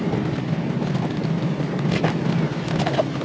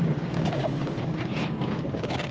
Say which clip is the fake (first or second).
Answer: second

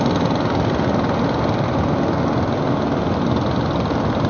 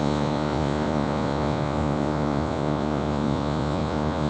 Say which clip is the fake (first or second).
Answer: second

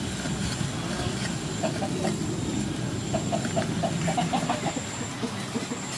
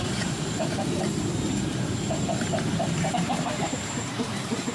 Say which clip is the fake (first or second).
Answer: second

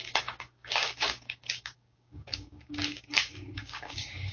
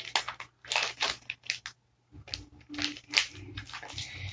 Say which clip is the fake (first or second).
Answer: first